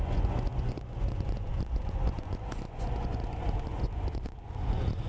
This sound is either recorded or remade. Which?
remade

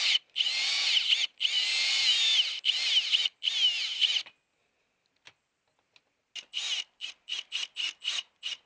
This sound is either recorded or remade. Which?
recorded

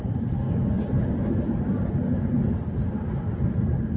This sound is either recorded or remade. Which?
recorded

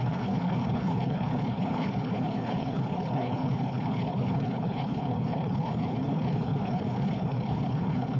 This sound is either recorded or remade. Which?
remade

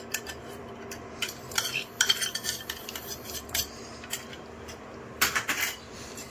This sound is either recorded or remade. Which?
remade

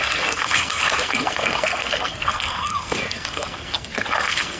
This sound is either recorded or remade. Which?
remade